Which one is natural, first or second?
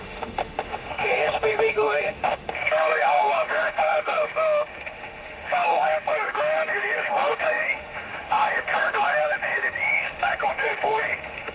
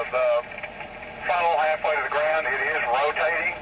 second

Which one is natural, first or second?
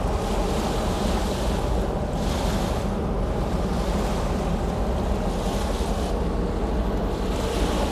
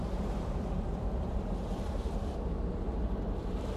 first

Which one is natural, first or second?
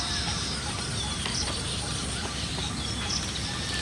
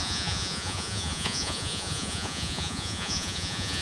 first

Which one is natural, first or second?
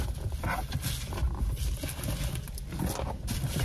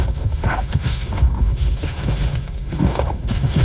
first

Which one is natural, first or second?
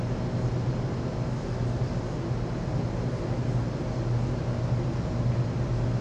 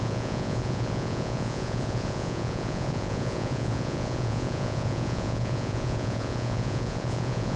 first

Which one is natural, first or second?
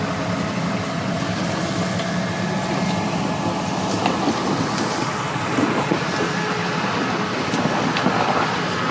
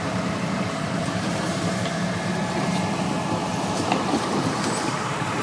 first